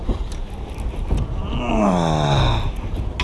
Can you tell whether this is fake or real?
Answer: real